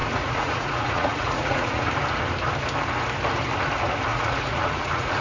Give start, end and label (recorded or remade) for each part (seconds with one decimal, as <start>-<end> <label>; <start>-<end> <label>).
0.0-1.9 remade; 1.9-4.1 recorded; 4.1-5.2 remade